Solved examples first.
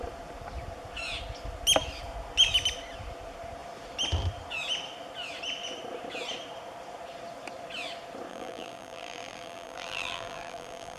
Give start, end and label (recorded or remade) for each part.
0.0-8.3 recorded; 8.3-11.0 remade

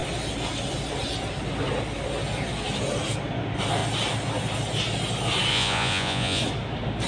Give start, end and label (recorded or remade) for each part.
0.0-5.5 recorded; 5.5-6.4 remade; 6.4-7.1 recorded

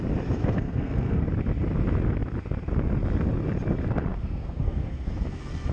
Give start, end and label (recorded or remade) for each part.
0.0-0.4 recorded; 0.4-1.3 remade; 1.3-4.1 recorded; 4.1-5.1 remade; 5.1-5.7 recorded

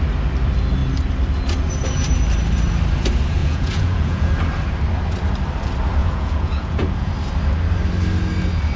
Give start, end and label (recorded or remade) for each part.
0.0-3.4 recorded; 3.4-4.3 remade; 4.3-6.0 recorded; 6.0-7.1 remade; 7.1-8.8 recorded

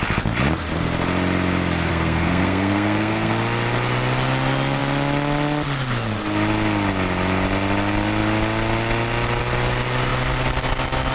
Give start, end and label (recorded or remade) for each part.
0.0-1.9 recorded; 1.9-3.3 remade; 3.3-11.1 recorded

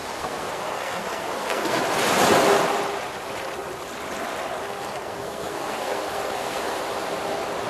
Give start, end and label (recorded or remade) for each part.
0.0-1.8 remade; 1.8-4.6 recorded; 4.6-6.8 remade; 6.8-7.7 recorded

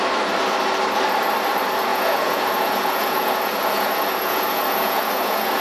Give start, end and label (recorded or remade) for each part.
0.0-1.9 recorded; 1.9-5.6 remade